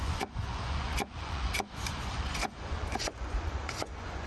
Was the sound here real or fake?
fake